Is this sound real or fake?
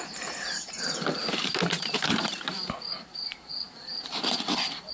fake